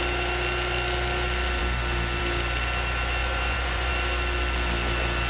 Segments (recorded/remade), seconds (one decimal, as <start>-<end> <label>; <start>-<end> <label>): 0.0-3.2 recorded; 3.2-3.9 remade; 3.9-5.3 recorded